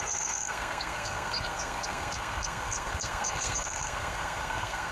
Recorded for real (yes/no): no